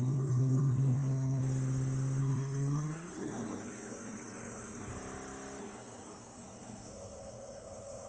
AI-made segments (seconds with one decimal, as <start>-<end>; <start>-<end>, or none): 0.0-1.4; 2.2-4.9; 5.6-8.1